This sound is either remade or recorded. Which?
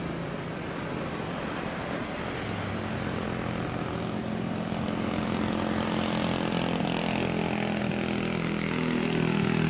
recorded